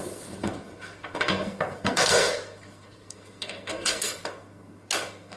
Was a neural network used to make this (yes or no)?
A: yes